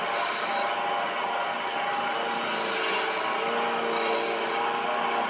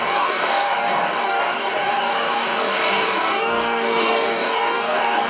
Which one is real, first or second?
first